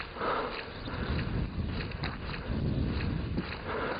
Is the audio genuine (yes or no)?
yes